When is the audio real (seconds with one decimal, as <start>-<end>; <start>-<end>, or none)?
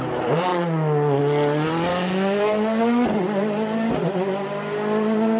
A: 0.0-1.9; 2.8-5.4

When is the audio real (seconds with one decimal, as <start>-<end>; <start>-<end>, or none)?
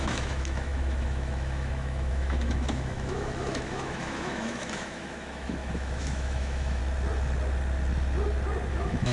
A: 6.8-8.7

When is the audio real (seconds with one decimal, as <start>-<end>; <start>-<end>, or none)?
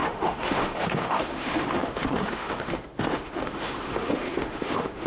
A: none